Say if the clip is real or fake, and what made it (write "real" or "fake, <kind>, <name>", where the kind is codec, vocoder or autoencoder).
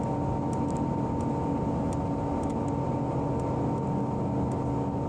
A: real